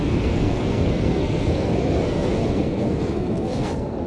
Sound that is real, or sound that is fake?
fake